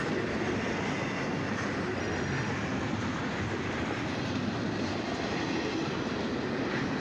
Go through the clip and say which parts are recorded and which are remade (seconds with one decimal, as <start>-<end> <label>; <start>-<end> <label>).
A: 0.0-2.0 recorded; 2.0-2.5 remade; 2.5-7.0 recorded